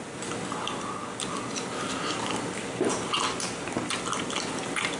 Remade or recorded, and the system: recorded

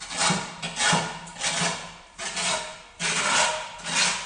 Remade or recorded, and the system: recorded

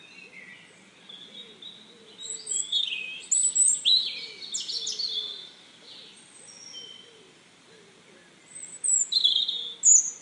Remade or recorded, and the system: recorded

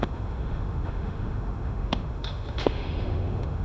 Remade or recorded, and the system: remade, autoencoder, DAC-VAE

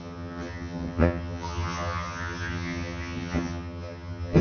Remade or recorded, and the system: remade, vocoder, HiFi-GAN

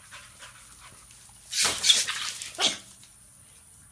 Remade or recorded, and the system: recorded